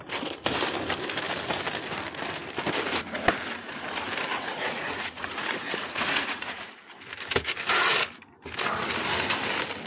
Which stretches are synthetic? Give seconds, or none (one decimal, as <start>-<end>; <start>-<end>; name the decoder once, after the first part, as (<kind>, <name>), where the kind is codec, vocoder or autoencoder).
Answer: 4.3-6.7 (vocoder, Vocos)